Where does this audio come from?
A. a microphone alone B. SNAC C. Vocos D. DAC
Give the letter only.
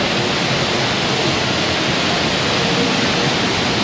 A